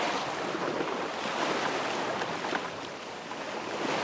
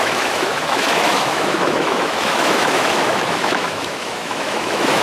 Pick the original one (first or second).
first